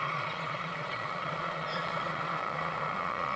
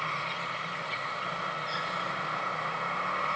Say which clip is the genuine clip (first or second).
second